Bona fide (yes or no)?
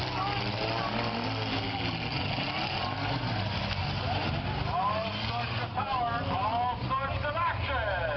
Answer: yes